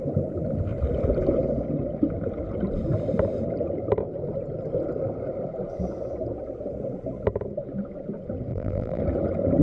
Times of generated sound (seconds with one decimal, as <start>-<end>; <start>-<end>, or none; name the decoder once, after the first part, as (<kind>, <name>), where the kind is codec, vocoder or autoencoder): 8.5-9.0 (vocoder, BigVGAN v2)